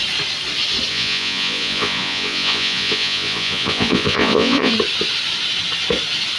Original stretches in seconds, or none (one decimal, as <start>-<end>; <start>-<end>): 0.0-0.9; 4.7-6.4